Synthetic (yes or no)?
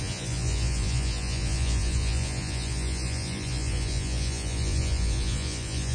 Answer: yes